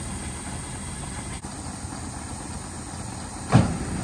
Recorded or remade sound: recorded